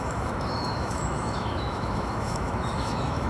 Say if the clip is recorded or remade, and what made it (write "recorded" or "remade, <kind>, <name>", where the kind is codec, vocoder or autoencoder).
remade, autoencoder, DAC-VAE